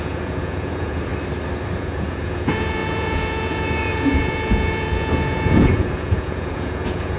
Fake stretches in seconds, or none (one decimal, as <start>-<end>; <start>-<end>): 0.0-1.1; 1.8-7.2

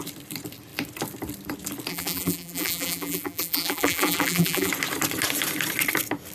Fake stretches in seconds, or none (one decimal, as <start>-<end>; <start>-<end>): 1.9-4.7

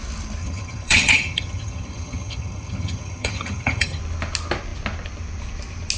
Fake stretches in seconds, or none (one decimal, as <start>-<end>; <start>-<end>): 0.4-4.0

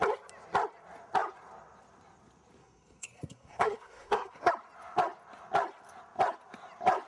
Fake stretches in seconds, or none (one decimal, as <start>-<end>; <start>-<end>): 2.6-4.5

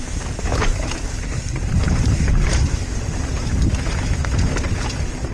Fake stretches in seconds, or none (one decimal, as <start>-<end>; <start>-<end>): 0.5-3.7

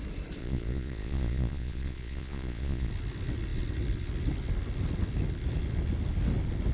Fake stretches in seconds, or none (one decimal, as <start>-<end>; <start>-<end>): 0.4-2.9